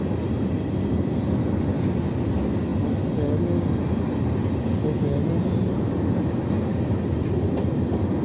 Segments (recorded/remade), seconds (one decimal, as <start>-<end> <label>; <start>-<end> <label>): 0.0-8.2 recorded